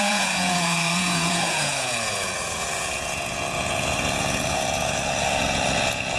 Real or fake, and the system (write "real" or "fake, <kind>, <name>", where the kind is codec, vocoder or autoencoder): fake, vocoder, Vocos